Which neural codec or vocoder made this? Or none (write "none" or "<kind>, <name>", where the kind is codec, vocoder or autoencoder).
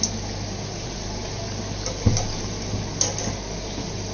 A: none